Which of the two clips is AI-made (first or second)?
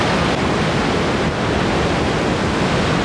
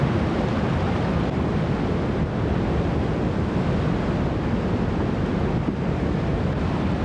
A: second